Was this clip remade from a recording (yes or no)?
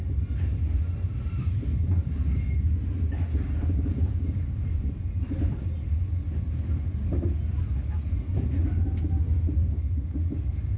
no